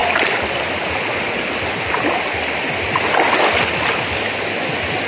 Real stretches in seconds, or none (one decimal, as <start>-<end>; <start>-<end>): 0.0-5.1